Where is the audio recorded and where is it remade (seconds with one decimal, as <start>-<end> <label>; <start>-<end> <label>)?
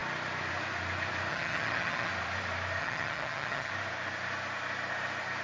0.0-1.3 recorded; 1.3-2.1 remade; 2.1-2.8 recorded; 2.8-3.7 remade; 3.7-5.4 recorded